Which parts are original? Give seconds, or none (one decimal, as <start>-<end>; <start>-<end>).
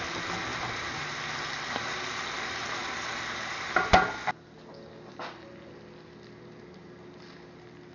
0.0-7.9